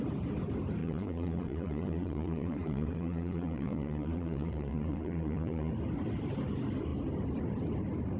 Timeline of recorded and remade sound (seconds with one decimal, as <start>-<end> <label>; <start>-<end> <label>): 0.0-0.8 recorded; 0.8-5.7 remade; 5.7-8.2 recorded